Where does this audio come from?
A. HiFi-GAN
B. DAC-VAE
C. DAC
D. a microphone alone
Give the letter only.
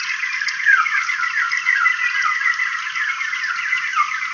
D